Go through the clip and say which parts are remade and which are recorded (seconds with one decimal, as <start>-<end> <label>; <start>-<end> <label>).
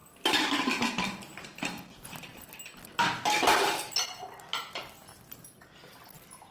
0.0-6.5 recorded